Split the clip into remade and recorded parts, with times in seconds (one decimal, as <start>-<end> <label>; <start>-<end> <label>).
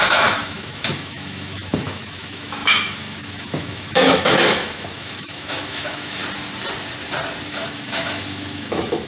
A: 0.0-6.2 remade; 6.2-7.5 recorded; 7.5-9.1 remade